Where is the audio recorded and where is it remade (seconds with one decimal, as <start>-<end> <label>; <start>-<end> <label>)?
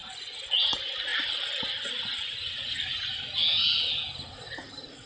0.0-1.1 recorded; 1.1-1.9 remade; 1.9-5.1 recorded